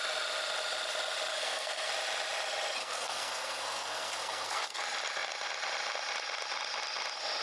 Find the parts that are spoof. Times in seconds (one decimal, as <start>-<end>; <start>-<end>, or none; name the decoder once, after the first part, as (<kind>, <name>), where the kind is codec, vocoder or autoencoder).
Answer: 1.3-1.9 (codec, SNAC); 2.8-4.8